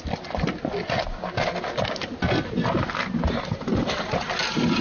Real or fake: real